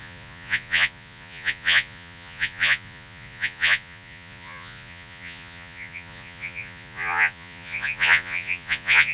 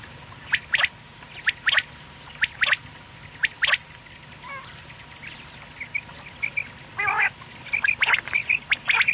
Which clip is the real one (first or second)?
second